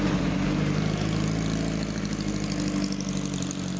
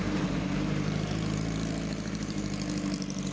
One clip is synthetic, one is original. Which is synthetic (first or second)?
second